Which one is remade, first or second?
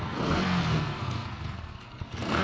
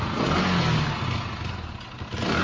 first